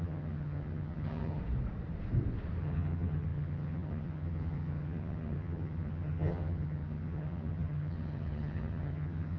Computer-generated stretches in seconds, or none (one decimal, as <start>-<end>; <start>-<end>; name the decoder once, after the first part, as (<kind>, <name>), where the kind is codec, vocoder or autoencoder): 0.0-1.4 (vocoder, HiFi-GAN); 2.6-9.4